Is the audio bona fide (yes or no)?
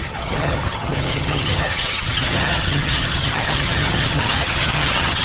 no